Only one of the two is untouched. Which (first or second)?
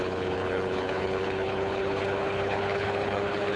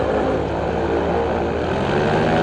second